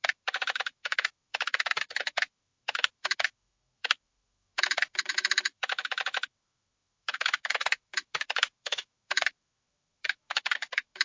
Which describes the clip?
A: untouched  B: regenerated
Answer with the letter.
B